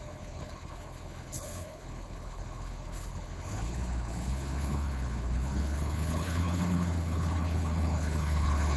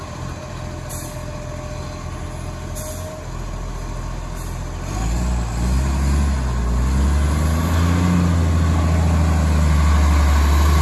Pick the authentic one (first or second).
second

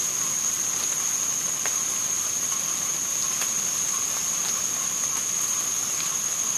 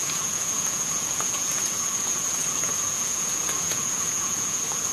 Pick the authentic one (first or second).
first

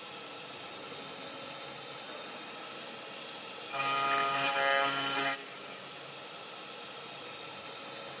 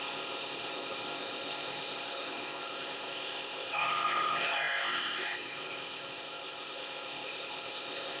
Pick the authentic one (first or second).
first